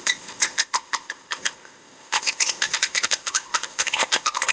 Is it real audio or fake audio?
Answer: fake